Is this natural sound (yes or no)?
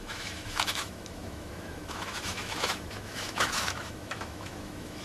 no